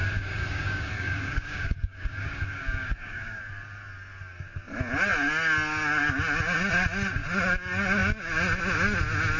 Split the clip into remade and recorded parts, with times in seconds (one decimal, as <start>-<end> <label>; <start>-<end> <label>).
0.0-3.4 remade; 3.4-9.4 recorded